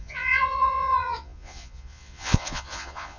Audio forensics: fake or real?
fake